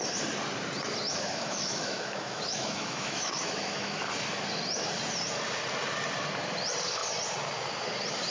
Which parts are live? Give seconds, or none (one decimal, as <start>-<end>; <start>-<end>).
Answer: 0.0-1.1; 4.0-8.3